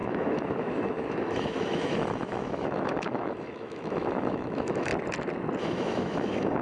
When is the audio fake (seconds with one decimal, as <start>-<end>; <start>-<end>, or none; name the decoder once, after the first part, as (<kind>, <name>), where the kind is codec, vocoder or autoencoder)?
0.0-4.9 (autoencoder, DAC-VAE); 5.6-6.6

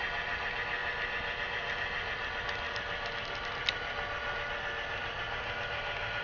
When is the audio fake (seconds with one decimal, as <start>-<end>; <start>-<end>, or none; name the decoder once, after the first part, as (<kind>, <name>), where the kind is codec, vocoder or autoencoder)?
none

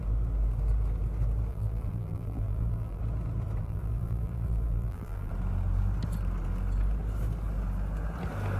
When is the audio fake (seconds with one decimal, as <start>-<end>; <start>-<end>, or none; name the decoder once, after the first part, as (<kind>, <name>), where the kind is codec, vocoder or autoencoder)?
1.5-3.0 (vocoder, BigVGAN v2); 3.6-5.3

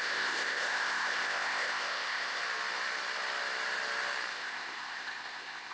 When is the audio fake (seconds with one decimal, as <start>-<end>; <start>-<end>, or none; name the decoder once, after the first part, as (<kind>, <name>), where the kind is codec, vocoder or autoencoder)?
0.0-2.4 (codec, ZipCodec); 4.3-5.7

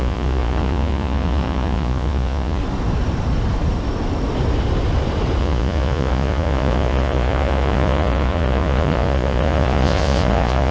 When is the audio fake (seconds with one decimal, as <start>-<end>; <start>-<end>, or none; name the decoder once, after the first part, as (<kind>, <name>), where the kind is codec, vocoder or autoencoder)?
0.0-2.6 (vocoder, Vocos); 5.4-10.7